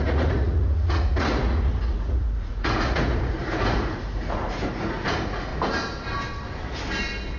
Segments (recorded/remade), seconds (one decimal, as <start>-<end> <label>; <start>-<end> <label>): 0.0-5.5 remade; 5.5-7.4 recorded